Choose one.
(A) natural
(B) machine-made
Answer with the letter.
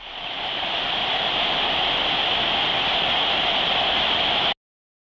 A